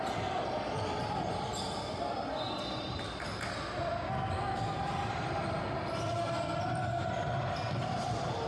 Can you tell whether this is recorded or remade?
recorded